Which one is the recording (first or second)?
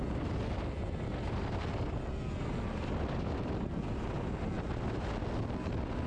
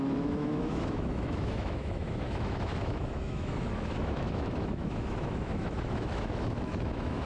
first